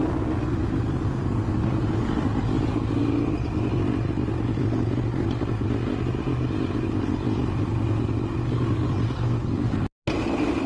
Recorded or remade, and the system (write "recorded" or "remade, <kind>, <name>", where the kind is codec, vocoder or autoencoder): recorded